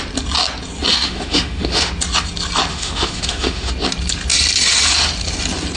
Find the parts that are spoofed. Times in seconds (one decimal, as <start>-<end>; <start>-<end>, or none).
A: 0.9-1.9; 2.7-3.7